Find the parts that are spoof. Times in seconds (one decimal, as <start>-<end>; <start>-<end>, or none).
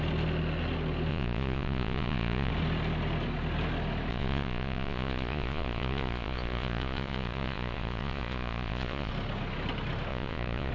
1.1-2.5; 4.1-9.1; 10.1-10.7